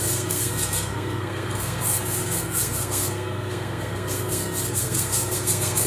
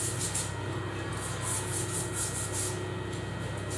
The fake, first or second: first